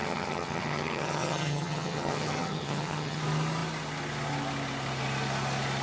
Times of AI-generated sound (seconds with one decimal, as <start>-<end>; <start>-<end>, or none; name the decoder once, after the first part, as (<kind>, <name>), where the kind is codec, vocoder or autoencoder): 0.0-3.2 (vocoder, HiFi-GAN)